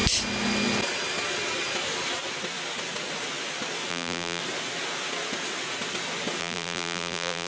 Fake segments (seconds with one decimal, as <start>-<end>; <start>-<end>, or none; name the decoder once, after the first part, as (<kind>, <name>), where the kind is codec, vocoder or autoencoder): 3.9-4.4 (vocoder, BigVGAN v2); 6.4-7.5